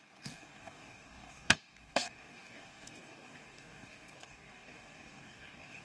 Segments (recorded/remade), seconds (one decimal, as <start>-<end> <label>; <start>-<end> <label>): 0.0-5.8 remade